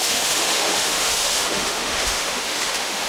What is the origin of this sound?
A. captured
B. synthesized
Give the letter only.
B